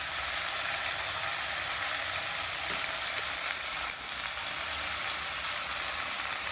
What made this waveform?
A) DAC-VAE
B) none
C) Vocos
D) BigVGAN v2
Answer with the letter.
D